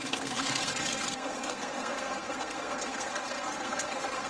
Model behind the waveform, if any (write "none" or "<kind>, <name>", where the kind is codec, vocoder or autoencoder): codec, SNAC